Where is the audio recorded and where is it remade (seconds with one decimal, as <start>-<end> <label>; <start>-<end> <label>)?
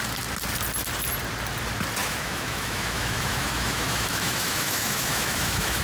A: 0.0-2.0 recorded; 2.0-5.8 remade